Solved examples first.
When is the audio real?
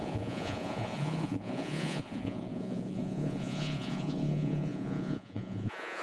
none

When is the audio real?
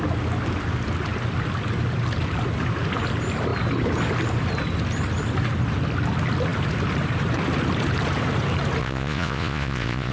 0.0-8.8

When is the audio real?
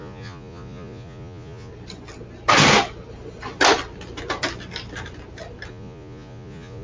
1.7-5.7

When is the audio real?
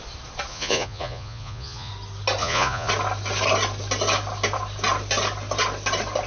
0.0-0.5; 1.9-2.4; 2.9-6.3